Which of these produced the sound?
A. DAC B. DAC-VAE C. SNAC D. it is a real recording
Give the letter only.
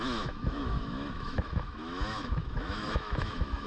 B